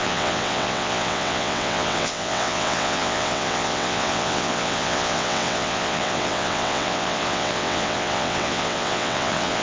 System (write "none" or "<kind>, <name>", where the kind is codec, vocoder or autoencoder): vocoder, WaveNeXt